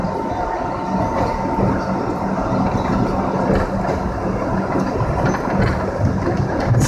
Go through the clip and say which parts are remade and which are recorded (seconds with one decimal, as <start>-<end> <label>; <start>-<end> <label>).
0.0-6.9 recorded